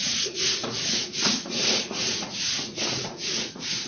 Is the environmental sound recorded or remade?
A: remade